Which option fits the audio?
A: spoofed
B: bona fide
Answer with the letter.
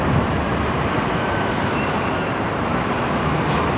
A